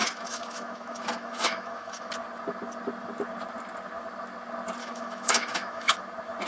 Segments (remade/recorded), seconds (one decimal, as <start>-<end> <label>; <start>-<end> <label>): 0.0-2.1 remade; 2.1-4.8 recorded; 4.8-6.0 remade; 6.0-6.5 recorded